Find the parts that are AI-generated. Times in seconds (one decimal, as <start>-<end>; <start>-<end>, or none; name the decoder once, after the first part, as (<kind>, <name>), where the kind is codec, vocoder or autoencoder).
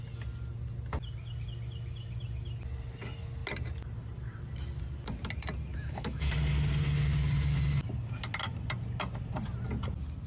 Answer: 5.7-6.3 (autoencoder, DAC-VAE)